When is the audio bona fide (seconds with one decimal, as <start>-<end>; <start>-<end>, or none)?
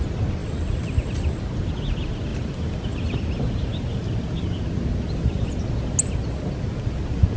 0.0-0.4; 1.4-7.4